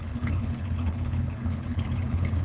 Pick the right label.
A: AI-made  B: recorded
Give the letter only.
A